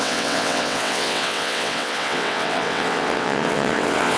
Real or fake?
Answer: fake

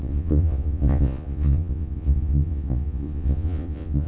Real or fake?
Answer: fake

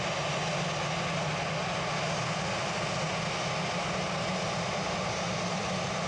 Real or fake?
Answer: real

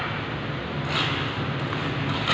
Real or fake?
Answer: real